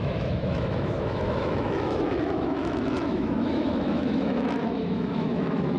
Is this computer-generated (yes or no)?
yes